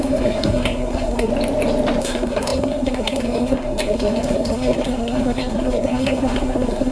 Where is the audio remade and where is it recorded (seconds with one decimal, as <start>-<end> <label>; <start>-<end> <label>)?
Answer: 0.0-1.3 remade; 1.3-2.0 recorded; 2.0-6.9 remade